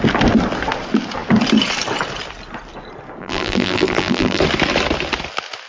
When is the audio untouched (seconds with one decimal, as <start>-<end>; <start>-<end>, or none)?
0.0-3.2; 4.4-5.7